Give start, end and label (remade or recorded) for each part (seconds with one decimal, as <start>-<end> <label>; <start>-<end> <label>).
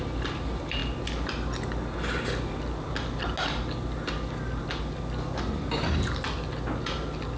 0.0-7.4 recorded